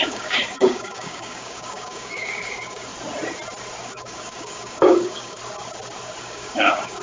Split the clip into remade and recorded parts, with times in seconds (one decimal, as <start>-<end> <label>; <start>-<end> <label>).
0.0-2.9 remade; 2.9-3.8 recorded; 3.8-5.4 remade; 5.4-6.2 recorded; 6.2-7.0 remade